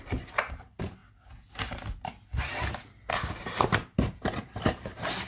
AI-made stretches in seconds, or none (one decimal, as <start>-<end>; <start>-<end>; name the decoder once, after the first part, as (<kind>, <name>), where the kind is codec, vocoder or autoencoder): 0.0-1.0 (vocoder, BigVGAN v2); 3.1-5.3

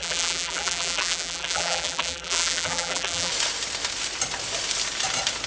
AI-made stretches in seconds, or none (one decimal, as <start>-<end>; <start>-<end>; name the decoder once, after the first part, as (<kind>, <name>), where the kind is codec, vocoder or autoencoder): 0.0-3.3 (vocoder, BigVGAN v2)

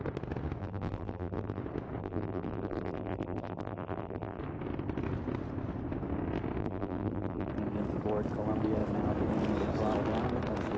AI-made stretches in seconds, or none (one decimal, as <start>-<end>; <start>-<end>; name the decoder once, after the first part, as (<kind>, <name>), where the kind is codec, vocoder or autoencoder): 0.6-1.6 (vocoder, BigVGAN v2); 2.0-4.4; 6.6-7.5

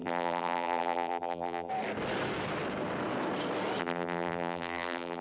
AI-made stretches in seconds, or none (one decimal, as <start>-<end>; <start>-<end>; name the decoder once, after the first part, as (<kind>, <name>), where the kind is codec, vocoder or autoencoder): 0.0-1.7 (vocoder, BigVGAN v2); 3.8-5.2

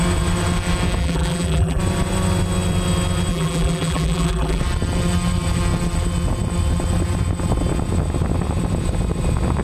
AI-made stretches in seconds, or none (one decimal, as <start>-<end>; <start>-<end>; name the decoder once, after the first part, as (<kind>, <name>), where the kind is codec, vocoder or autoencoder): 1.0-1.8 (vocoder, BigVGAN v2); 3.3-4.6